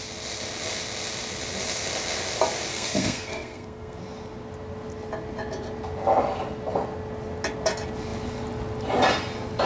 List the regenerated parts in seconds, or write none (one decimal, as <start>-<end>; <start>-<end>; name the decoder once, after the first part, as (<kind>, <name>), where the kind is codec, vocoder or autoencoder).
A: 2.7-4.0 (codec, SNAC)